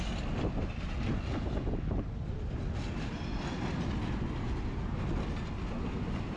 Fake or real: real